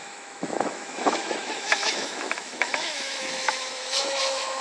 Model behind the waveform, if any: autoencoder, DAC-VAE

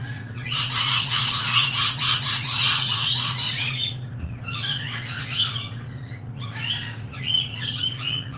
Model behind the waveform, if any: vocoder, Vocos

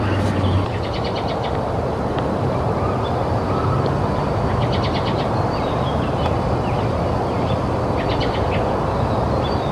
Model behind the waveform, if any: none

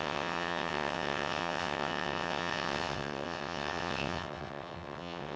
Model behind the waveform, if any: vocoder, WaveNeXt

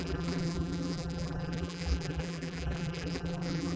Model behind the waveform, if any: vocoder, BigVGAN v2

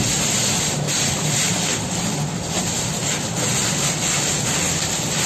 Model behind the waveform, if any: none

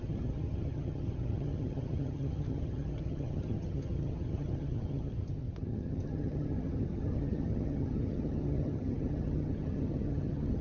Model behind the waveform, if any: vocoder, HiFi-GAN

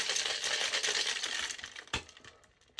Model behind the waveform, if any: none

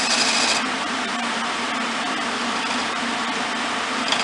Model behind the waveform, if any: none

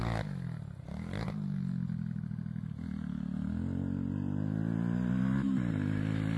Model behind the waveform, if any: none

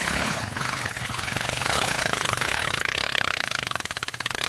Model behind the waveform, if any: codec, HILCodec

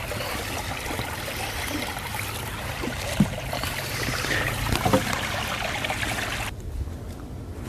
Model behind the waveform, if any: none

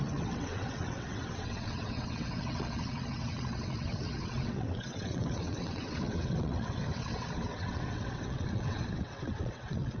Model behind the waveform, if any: vocoder, WaveNeXt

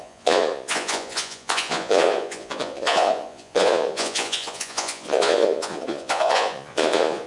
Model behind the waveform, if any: vocoder, Vocos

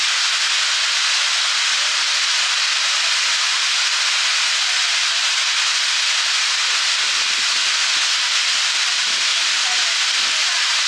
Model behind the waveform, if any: none